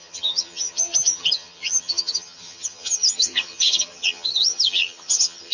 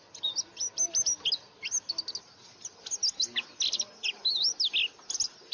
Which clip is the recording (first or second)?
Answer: second